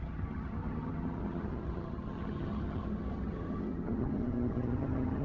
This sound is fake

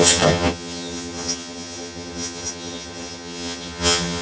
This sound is fake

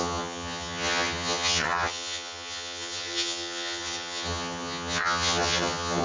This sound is fake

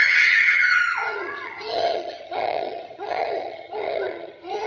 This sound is fake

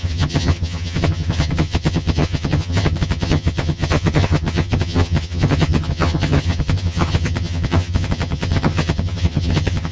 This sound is fake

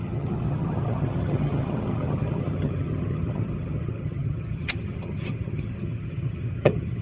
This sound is fake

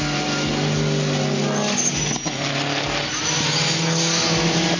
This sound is real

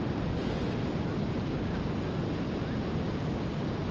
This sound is real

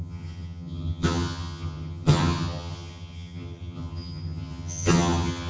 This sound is fake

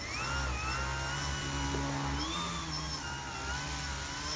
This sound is real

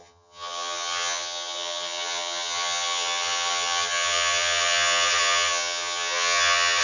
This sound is fake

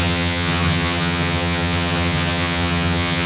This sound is fake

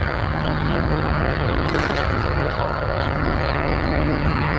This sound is fake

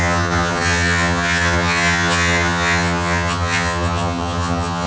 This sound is fake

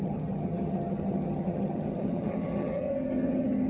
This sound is fake